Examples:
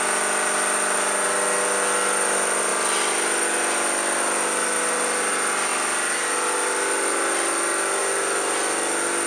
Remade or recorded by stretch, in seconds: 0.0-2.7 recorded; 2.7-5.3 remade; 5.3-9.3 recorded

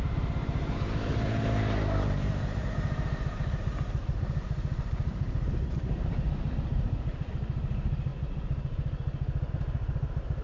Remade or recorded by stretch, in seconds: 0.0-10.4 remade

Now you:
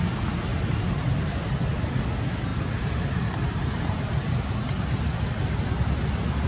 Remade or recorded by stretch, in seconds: 0.0-0.5 recorded; 0.5-2.0 remade; 2.0-2.5 recorded; 2.5-4.0 remade; 4.0-6.5 recorded

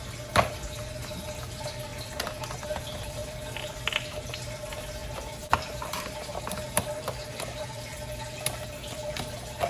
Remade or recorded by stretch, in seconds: 0.0-5.0 recorded; 5.0-9.7 remade

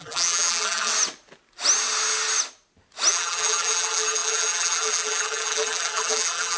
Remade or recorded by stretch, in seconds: 0.0-0.9 remade; 0.9-3.1 recorded; 3.1-6.6 remade